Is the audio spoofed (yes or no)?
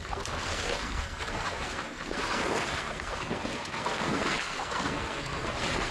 yes